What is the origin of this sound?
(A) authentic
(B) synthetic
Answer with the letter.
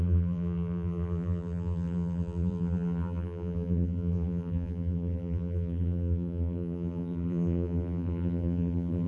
B